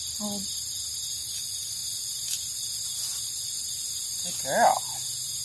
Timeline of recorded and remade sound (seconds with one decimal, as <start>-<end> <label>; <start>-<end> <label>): 0.0-5.4 recorded